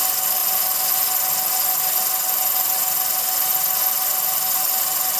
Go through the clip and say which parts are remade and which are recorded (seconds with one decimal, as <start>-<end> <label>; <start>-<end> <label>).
0.0-5.2 recorded